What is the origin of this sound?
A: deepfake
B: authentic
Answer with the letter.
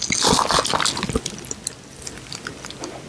B